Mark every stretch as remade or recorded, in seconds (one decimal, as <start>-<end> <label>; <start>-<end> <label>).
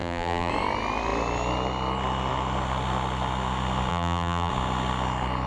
0.0-0.5 remade; 0.5-3.9 recorded; 3.9-4.5 remade; 4.5-5.5 recorded